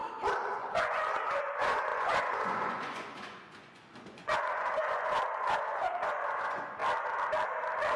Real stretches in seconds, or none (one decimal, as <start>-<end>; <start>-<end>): 0.0-0.5; 6.8-8.0